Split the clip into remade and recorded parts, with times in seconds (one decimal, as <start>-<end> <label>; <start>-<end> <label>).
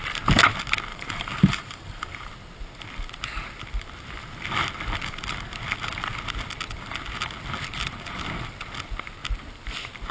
0.0-0.9 recorded; 0.9-2.3 remade; 2.3-10.1 recorded